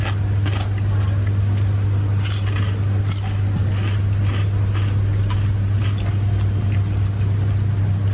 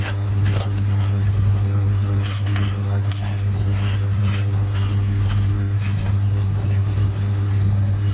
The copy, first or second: second